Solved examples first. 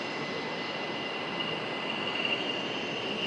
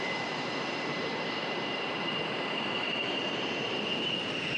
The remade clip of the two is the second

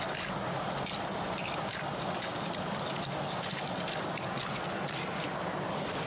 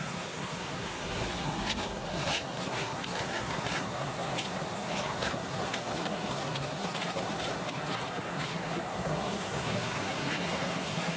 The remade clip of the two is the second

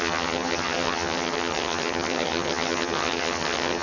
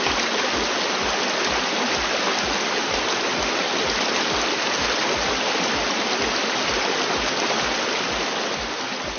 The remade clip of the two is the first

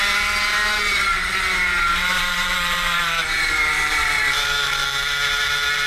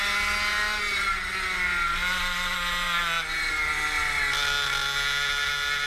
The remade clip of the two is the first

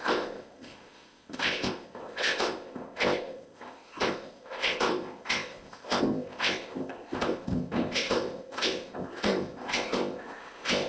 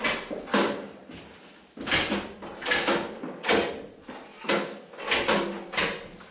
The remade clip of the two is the first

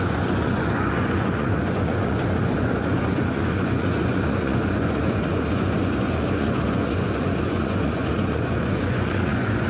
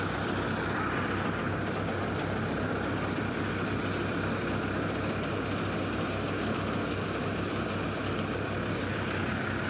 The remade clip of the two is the first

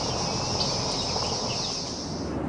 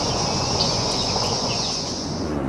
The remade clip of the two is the second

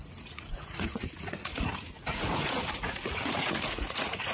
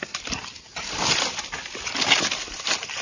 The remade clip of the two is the first